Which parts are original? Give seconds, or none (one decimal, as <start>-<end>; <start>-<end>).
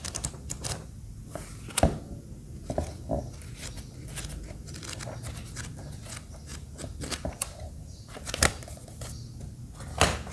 0.0-10.3